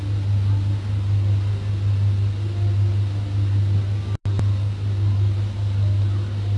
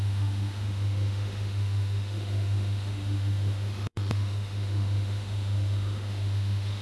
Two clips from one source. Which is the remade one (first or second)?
second